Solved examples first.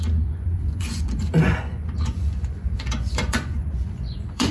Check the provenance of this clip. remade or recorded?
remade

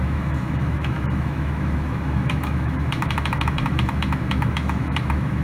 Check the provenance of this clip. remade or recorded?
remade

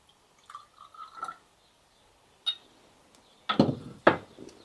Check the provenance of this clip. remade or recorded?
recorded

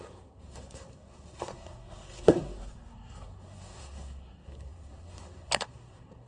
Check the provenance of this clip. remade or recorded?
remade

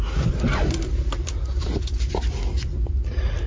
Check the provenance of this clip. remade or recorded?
recorded